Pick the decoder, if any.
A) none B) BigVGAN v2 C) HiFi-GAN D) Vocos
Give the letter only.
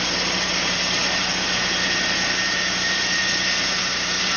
B